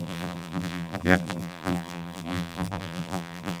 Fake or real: fake